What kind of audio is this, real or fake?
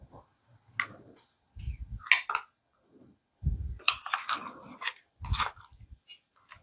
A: real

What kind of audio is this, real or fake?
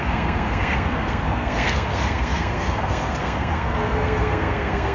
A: fake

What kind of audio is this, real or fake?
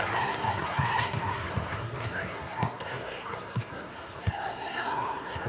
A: fake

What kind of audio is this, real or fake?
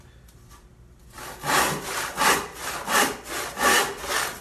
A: real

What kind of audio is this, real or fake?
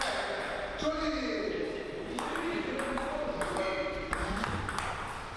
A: real